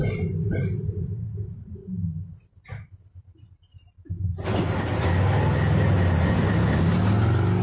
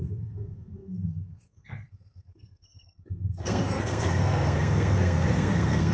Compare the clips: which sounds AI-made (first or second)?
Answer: second